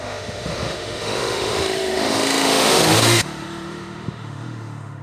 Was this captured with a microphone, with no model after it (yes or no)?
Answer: no